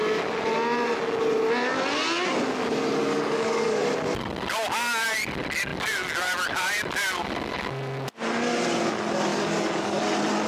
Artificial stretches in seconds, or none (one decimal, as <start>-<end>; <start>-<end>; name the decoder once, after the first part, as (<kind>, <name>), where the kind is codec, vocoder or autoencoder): 3.0-3.8 (codec, DAC); 9.3-10.0